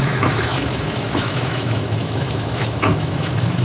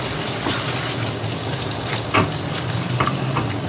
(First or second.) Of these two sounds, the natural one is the second